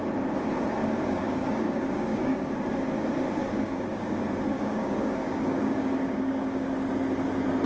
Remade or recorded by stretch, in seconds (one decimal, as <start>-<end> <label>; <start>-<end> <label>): 0.0-0.8 recorded; 0.8-2.5 remade; 2.5-3.4 recorded; 3.4-4.1 remade; 4.1-4.5 recorded; 4.5-6.9 remade; 6.9-7.7 recorded